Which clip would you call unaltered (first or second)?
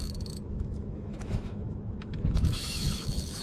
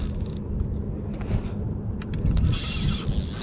second